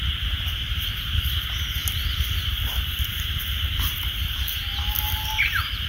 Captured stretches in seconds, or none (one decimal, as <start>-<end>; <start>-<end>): 0.0-5.9